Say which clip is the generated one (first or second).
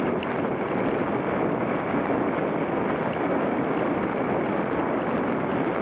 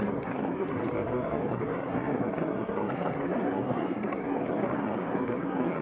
second